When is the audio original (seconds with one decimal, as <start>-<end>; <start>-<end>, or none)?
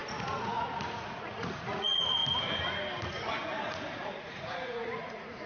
2.2-3.1